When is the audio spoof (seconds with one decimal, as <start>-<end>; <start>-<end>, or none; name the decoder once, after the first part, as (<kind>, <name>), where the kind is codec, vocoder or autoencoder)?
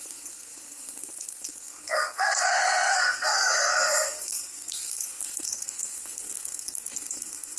0.0-7.6 (codec, SNAC)